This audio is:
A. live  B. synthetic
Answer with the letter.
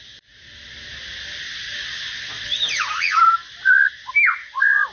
A